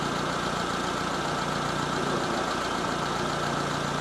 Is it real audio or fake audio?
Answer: real